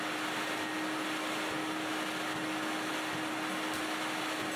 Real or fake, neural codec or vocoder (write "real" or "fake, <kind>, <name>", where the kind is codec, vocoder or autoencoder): real